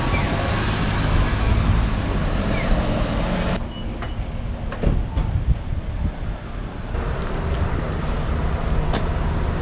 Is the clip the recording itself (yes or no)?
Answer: yes